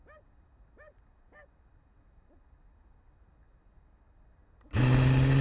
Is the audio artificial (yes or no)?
no